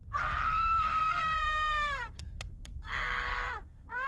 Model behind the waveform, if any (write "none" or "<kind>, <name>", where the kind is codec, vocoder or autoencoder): codec, SNAC